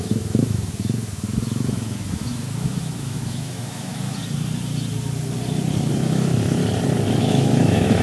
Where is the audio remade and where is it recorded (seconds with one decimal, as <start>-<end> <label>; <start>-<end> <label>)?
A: 0.0-4.2 remade; 4.2-5.9 recorded; 5.9-6.6 remade; 6.6-7.2 recorded; 7.2-8.0 remade

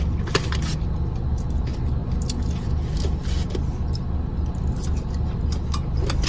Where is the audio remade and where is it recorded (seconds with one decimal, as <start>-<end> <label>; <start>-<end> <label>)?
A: 0.0-6.3 recorded

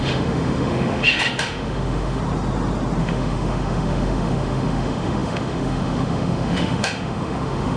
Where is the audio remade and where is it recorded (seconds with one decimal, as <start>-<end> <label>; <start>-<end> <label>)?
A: 0.0-2.2 remade; 2.2-3.0 recorded; 3.0-7.8 remade

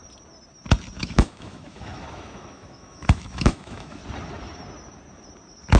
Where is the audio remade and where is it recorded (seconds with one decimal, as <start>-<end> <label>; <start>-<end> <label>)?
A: 0.0-1.0 recorded; 1.0-4.0 remade; 4.0-5.8 recorded

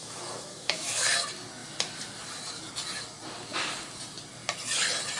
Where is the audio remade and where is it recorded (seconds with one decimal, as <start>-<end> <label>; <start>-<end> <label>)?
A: 0.0-1.1 remade; 1.1-5.2 recorded

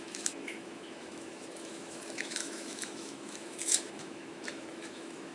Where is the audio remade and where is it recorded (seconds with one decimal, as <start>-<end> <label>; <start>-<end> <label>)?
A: 0.0-5.3 remade

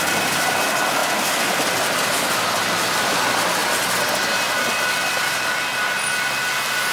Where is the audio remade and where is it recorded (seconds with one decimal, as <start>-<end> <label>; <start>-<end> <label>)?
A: 0.0-6.9 recorded